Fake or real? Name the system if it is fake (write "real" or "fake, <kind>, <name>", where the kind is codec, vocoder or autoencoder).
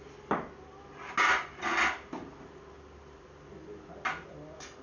real